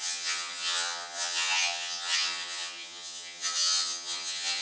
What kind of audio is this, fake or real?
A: fake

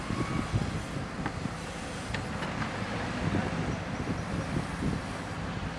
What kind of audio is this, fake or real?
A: real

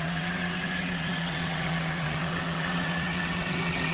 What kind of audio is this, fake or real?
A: fake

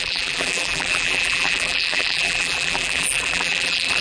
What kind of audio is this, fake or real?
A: fake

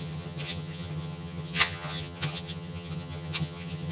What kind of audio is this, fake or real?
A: fake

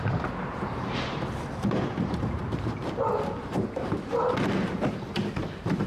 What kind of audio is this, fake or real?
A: fake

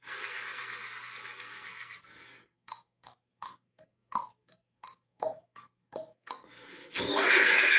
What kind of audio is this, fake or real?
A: fake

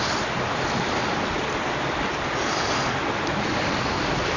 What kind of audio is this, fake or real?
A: real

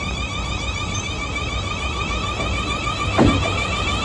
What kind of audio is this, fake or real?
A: real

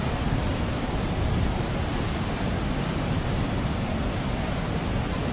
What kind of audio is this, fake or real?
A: real